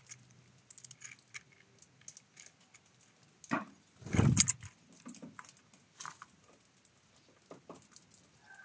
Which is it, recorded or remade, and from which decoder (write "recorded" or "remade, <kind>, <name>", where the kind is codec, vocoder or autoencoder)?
recorded